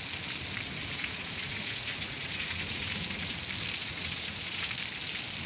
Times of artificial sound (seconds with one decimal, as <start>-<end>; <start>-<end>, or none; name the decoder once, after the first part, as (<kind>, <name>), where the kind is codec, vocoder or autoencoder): 0.8-3.4 (vocoder, Vocos); 3.8-4.7